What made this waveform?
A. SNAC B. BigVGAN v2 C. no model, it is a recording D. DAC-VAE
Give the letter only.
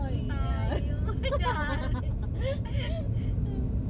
C